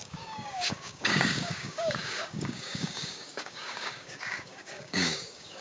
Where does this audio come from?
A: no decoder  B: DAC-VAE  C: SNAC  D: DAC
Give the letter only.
D